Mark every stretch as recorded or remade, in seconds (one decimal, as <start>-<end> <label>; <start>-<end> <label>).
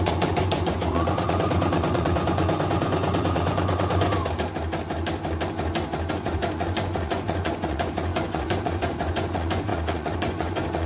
0.0-4.2 remade; 4.2-6.1 recorded; 6.1-10.9 remade